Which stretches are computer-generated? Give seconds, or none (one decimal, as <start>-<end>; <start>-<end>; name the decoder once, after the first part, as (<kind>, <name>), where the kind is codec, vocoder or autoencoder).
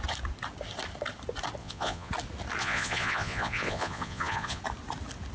1.6-2.1 (vocoder, Vocos); 2.6-4.6